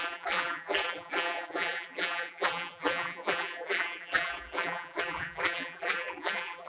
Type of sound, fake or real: fake